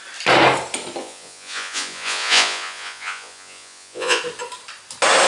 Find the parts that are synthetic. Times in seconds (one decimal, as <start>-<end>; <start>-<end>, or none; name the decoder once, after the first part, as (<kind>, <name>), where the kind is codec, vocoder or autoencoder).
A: 1.0-4.2 (vocoder, Vocos)